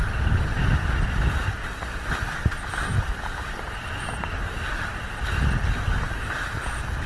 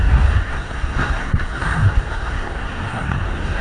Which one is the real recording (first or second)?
first